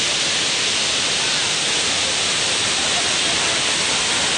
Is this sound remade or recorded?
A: recorded